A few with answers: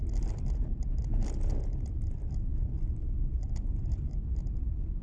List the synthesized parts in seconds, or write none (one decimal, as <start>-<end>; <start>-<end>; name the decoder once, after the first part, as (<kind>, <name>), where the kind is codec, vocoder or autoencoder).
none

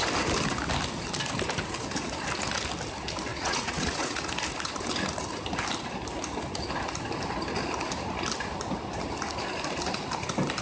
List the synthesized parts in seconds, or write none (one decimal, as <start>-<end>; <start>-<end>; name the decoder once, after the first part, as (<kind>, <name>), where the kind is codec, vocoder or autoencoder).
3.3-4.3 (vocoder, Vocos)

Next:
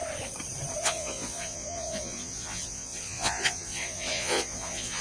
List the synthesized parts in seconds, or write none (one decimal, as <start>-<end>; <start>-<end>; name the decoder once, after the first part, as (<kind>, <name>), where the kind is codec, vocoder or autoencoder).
0.8-5.0 (vocoder, Vocos)